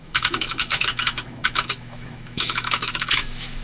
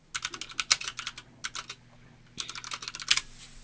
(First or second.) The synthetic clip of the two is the first